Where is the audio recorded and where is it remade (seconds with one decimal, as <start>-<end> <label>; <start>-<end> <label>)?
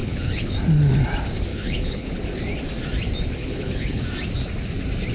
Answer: 0.0-0.5 remade; 0.5-1.5 recorded; 1.5-2.1 remade; 2.1-3.4 recorded; 3.4-4.0 remade; 4.0-5.1 recorded